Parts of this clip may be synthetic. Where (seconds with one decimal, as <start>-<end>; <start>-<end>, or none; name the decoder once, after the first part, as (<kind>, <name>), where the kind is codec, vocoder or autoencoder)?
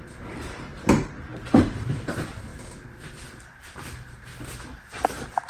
0.0-0.7 (vocoder, BigVGAN v2); 1.6-2.5; 3.6-4.3